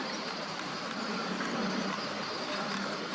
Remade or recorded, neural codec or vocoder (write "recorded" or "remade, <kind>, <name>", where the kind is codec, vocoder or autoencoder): remade, vocoder, BigVGAN v2